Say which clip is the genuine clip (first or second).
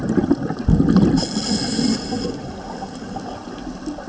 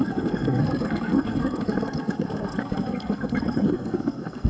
first